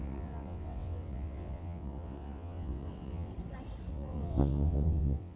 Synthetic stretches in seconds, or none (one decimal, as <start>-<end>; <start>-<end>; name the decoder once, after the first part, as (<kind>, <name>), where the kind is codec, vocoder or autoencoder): 0.0-3.3 (vocoder, WaveNeXt); 3.9-5.4

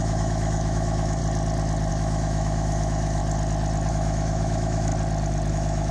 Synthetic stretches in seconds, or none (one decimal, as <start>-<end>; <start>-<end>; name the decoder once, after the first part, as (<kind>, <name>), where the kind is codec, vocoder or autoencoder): 0.0-1.2 (autoencoder, DAC-VAE); 1.9-3.2; 3.9-4.9; 5.5-5.9

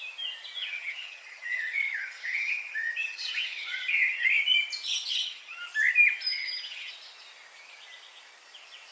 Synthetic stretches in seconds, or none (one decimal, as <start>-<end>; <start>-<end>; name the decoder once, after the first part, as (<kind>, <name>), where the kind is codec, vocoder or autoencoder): 0.6-4.3 (vocoder, HiFi-GAN); 5.1-5.6; 6.3-6.9

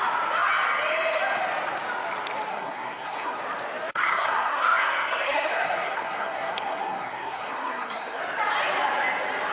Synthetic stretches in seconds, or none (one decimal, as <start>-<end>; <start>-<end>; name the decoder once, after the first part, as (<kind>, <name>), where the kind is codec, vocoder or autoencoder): 2.5-3.4 (codec, SNAC); 3.9-8.2

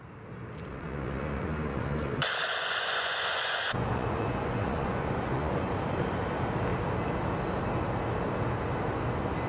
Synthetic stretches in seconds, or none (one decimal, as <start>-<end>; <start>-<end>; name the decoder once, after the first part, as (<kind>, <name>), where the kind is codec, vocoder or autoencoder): 0.7-5.7 (vocoder, Vocos)

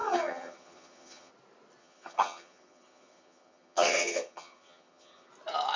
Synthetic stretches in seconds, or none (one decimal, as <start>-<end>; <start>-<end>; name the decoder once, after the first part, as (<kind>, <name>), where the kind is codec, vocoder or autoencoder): 0.0-1.3 (vocoder, HiFi-GAN); 1.8-5.3